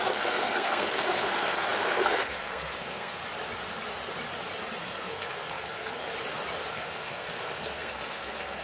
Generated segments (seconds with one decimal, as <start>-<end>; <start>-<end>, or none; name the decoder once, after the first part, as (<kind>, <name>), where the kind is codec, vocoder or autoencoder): 0.0-3.2 (codec, SNAC); 4.8-6.1; 6.7-8.6